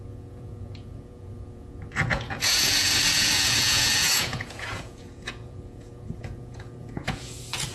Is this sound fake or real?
fake